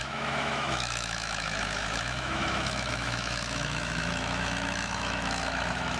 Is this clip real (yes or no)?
no